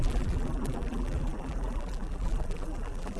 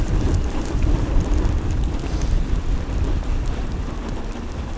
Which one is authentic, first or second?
second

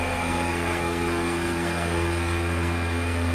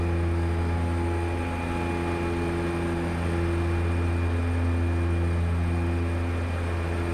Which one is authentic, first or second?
second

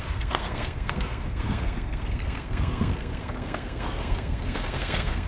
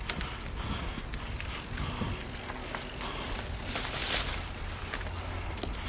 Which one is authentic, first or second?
second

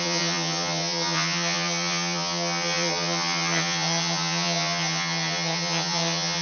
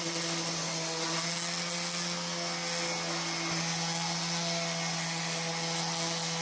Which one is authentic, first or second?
second